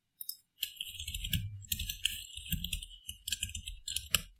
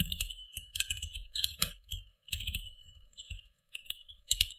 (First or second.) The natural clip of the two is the first